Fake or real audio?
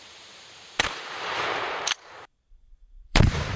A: fake